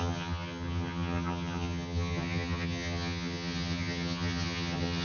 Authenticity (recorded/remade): remade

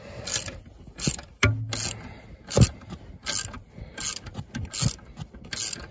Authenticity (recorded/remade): recorded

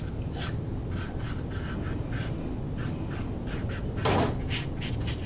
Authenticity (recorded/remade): recorded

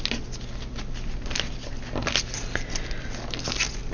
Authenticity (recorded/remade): recorded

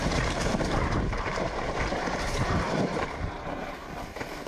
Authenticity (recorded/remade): remade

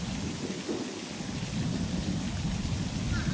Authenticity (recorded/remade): recorded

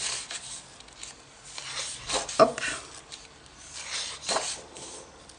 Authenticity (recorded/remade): recorded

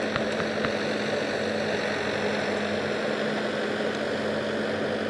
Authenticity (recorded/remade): recorded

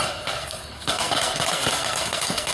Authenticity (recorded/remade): remade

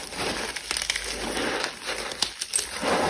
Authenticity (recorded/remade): recorded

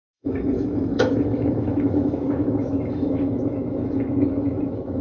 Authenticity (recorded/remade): remade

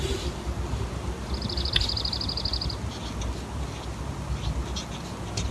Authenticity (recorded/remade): recorded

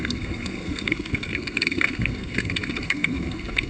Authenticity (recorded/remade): remade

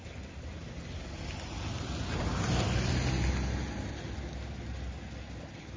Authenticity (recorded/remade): recorded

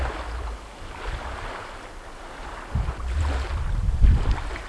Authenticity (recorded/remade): recorded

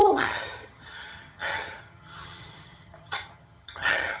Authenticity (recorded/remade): remade